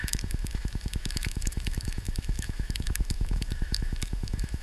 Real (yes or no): no